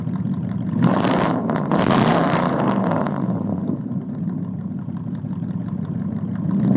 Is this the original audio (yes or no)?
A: no